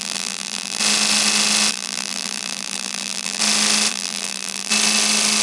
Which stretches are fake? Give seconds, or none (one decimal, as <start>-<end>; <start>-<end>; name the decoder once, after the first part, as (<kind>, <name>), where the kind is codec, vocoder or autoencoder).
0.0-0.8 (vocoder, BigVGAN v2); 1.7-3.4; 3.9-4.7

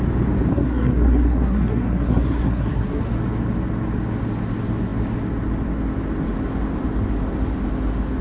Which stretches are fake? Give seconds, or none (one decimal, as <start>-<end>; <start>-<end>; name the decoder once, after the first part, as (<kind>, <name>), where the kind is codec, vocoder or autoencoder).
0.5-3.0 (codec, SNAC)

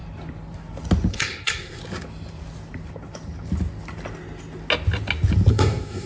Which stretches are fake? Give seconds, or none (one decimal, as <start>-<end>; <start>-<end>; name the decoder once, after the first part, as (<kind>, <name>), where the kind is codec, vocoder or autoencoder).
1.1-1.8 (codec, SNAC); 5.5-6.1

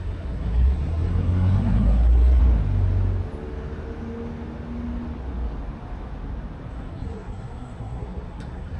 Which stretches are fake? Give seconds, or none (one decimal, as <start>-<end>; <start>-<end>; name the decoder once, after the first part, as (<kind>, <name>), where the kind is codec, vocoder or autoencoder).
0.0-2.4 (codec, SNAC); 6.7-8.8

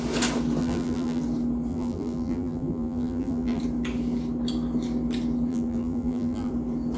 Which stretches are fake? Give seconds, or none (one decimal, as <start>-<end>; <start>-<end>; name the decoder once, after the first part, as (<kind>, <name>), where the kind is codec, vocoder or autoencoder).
0.6-1.2 (vocoder, BigVGAN v2); 1.7-3.6; 5.5-6.5

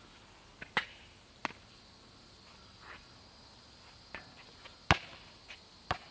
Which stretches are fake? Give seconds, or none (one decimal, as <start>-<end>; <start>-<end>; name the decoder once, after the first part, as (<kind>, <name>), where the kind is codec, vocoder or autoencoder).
none